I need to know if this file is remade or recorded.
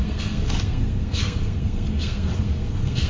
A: remade